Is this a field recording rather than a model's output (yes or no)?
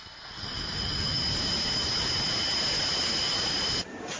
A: yes